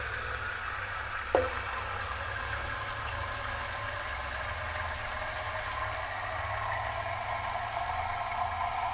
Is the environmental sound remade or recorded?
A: recorded